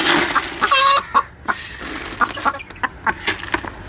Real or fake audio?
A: real